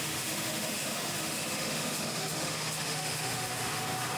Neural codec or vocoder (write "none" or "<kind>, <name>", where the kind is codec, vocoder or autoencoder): autoencoder, DAC-VAE